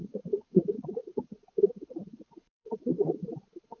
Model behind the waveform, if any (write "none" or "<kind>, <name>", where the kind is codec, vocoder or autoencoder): vocoder, Vocos